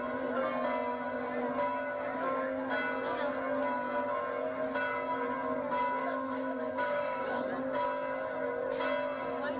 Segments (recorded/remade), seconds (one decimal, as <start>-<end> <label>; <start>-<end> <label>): 0.0-6.0 recorded; 6.0-7.5 remade; 7.5-9.6 recorded